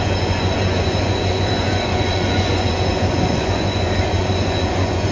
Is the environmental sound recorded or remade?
remade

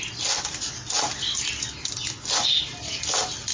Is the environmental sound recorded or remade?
recorded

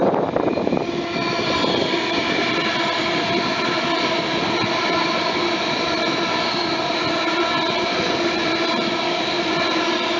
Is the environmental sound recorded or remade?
recorded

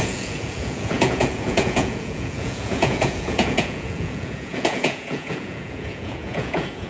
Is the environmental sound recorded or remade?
remade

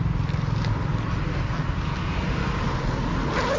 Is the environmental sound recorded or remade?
recorded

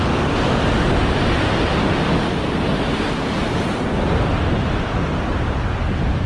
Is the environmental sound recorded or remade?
recorded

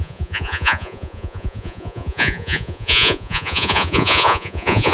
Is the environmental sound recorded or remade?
remade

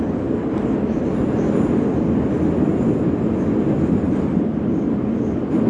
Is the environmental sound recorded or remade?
recorded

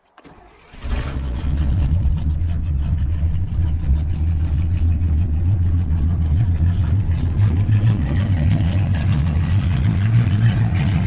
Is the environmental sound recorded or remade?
remade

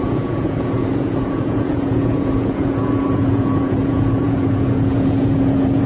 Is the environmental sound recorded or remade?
remade